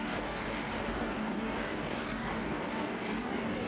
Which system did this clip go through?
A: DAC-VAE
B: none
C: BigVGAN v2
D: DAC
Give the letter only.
D